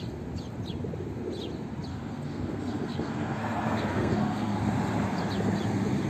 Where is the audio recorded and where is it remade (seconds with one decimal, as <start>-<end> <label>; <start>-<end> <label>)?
0.0-1.9 recorded; 1.9-4.6 remade; 4.6-6.1 recorded